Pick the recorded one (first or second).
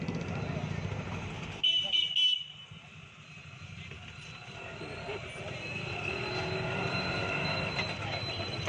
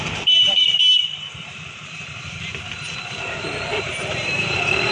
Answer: first